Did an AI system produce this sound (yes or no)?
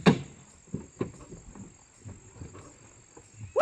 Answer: no